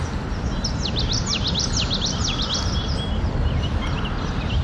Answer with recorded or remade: recorded